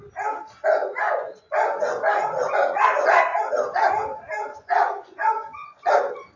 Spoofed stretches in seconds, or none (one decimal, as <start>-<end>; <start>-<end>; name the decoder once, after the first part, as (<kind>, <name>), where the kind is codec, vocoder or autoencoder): 0.8-3.5 (vocoder, Vocos); 4.4-5.9